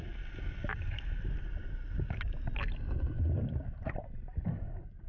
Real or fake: real